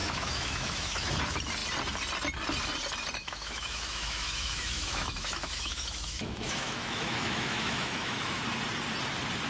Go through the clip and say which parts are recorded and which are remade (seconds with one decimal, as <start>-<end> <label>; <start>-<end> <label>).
0.0-1.1 remade; 1.1-3.2 recorded; 3.2-8.4 remade; 8.4-9.5 recorded